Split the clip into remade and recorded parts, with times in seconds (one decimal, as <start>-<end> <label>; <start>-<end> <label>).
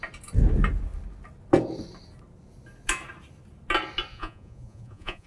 0.0-4.1 recorded; 4.1-5.3 remade